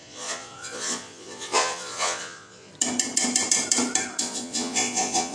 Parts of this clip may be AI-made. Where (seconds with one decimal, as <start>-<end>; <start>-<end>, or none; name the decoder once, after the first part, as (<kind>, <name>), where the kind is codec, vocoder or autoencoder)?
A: 0.0-2.7 (vocoder, Vocos); 4.2-5.3